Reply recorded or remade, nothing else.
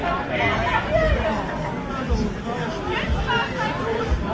recorded